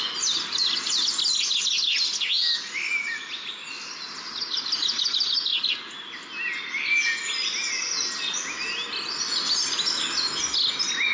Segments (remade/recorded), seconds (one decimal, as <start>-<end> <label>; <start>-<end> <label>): 0.0-11.1 recorded